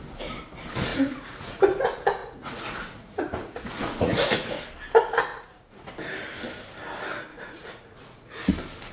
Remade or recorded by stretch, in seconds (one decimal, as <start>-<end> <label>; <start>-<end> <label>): 0.0-0.9 recorded; 0.9-1.6 remade; 1.6-2.2 recorded; 2.2-4.6 remade; 4.6-5.3 recorded; 5.3-5.9 remade; 5.9-7.3 recorded; 7.3-8.5 remade; 8.5-8.9 recorded